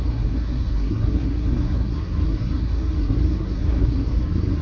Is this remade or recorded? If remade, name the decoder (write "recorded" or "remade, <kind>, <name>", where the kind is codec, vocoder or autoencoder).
remade, codec, SNAC